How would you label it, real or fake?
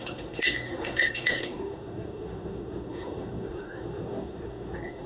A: fake